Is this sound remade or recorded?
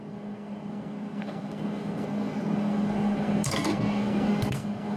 remade